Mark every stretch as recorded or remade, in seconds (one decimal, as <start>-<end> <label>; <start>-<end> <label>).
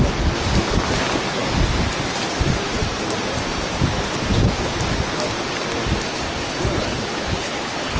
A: 0.0-6.8 recorded; 6.8-8.0 remade